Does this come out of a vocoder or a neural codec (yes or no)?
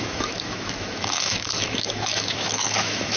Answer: yes